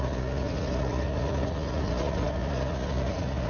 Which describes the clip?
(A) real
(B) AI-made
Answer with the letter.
B